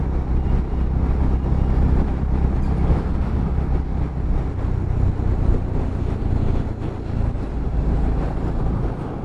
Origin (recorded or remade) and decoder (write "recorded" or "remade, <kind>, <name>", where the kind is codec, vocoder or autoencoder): recorded